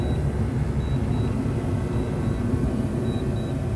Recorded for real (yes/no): yes